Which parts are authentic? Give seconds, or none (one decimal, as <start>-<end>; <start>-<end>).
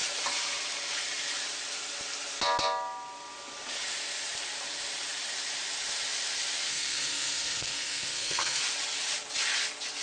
0.0-6.7; 8.6-10.0